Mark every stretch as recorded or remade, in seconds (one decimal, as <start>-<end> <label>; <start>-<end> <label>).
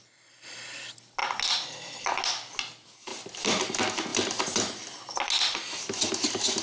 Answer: 0.0-3.1 recorded; 3.1-3.6 remade; 3.6-4.1 recorded; 4.1-5.2 remade; 5.2-6.6 recorded